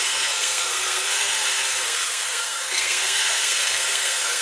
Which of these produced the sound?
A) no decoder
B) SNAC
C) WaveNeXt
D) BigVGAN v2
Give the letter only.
B